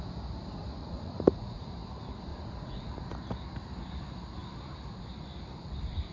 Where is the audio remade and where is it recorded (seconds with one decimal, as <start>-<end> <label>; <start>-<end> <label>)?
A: 0.0-0.8 recorded; 0.8-1.7 remade; 1.7-2.3 recorded; 2.3-3.0 remade; 3.0-6.1 recorded